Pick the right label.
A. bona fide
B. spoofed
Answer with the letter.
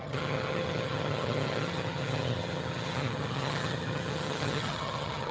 B